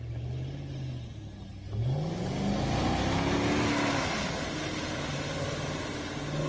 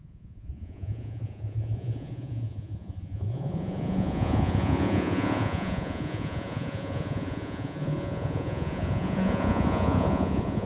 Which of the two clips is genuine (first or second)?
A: first